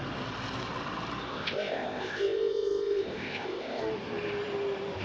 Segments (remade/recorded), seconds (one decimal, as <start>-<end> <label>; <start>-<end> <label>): 0.0-1.3 recorded; 1.3-3.8 remade; 3.8-5.0 recorded